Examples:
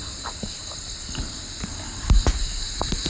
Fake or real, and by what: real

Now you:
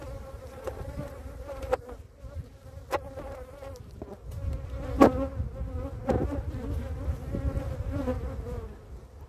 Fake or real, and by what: real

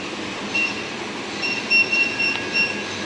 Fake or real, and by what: fake, vocoder, BigVGAN v2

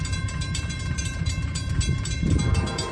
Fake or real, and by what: fake, vocoder, BigVGAN v2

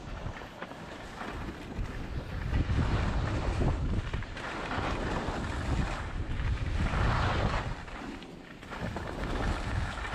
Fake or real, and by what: real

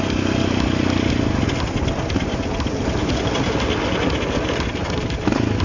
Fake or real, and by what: real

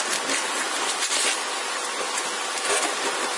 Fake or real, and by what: real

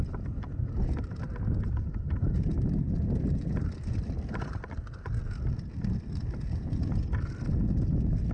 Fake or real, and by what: real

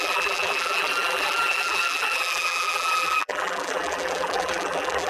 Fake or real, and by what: fake, vocoder, BigVGAN v2